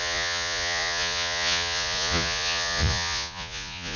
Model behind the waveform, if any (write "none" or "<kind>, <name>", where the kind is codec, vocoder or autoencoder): vocoder, Vocos